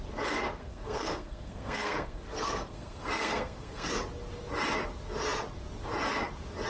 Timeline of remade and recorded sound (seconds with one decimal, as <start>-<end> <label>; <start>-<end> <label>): 0.0-0.6 recorded; 0.6-3.9 remade; 3.9-6.7 recorded